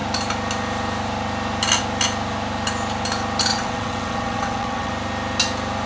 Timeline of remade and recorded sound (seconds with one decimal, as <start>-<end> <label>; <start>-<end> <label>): 0.0-3.5 recorded; 3.5-4.9 remade; 4.9-5.9 recorded